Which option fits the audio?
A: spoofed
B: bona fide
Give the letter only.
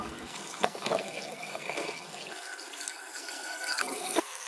A